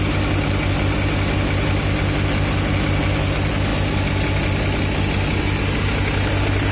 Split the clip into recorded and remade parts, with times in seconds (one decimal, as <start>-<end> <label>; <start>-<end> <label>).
0.0-6.7 recorded